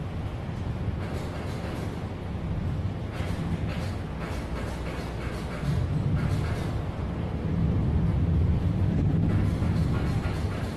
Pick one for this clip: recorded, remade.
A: recorded